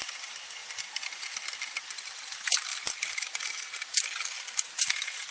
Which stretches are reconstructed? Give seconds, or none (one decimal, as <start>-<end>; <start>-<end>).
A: none

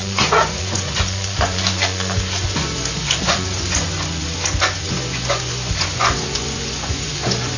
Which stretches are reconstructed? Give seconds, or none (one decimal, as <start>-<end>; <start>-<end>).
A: 0.0-7.6

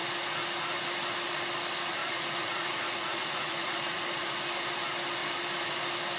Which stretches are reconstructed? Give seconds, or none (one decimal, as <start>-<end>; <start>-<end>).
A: 2.0-4.4

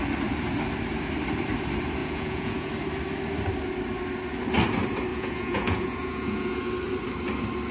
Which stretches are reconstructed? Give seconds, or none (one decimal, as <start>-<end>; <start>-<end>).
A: 2.0-2.7; 5.1-6.7